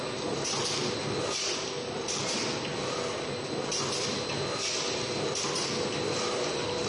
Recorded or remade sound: recorded